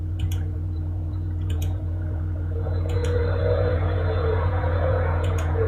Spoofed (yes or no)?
yes